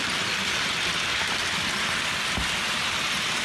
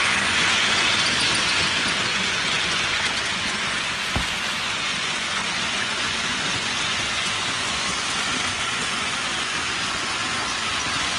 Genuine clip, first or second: first